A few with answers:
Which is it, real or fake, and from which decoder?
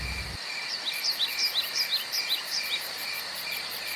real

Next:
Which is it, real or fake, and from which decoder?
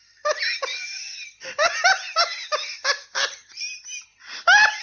real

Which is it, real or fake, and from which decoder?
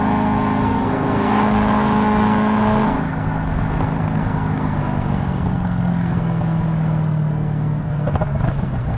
fake, codec, SNAC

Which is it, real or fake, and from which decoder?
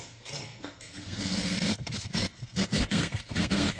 fake, codec, SNAC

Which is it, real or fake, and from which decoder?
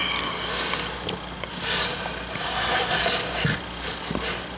real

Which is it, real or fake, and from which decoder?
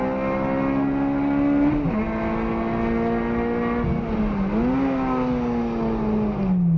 real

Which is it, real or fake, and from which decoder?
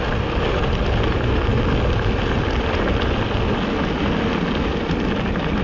real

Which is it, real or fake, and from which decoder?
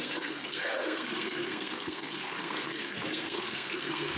fake, codec, SNAC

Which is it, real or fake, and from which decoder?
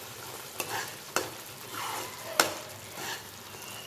real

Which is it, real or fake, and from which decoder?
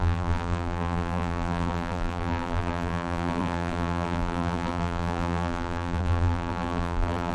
fake, vocoder, BigVGAN v2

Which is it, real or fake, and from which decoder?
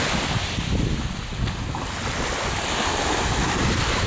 real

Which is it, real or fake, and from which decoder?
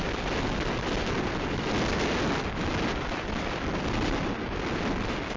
real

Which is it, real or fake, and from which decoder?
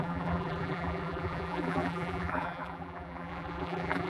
fake, vocoder, BigVGAN v2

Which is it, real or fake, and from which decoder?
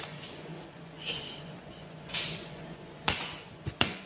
fake, vocoder, Vocos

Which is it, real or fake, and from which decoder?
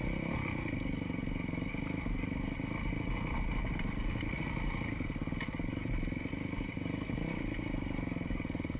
real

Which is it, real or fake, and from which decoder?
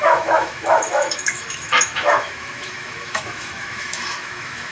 fake, autoencoder, DAC-VAE